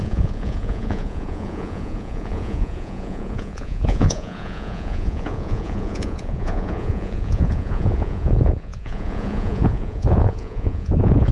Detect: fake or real fake